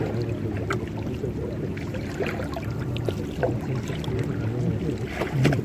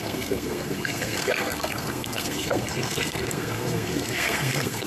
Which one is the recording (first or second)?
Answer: first